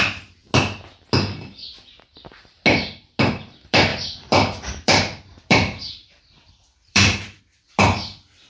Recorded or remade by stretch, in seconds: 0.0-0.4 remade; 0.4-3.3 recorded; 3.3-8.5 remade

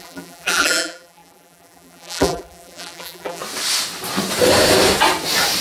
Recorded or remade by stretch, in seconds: 0.0-3.4 remade; 3.4-5.6 recorded

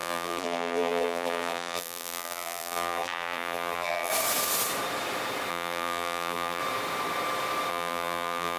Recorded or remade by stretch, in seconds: 0.0-4.1 remade; 4.1-5.5 recorded; 5.5-6.6 remade; 6.6-7.7 recorded; 7.7-8.6 remade

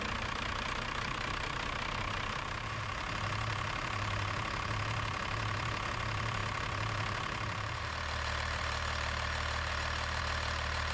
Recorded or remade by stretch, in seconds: 0.0-10.9 remade

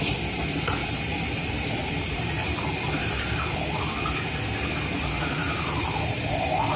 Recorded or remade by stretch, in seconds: 0.0-0.8 recorded; 0.8-3.8 remade; 3.8-5.4 recorded; 5.4-6.3 remade; 6.3-6.8 recorded

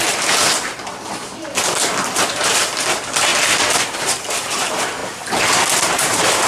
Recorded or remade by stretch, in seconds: 0.0-0.9 remade; 0.9-2.3 recorded; 2.3-3.3 remade; 3.3-4.0 recorded; 4.0-5.0 remade; 5.0-5.8 recorded; 5.8-6.5 remade

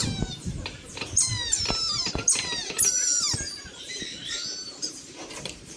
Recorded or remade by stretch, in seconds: 0.0-1.3 remade; 1.3-4.8 recorded; 4.8-5.8 remade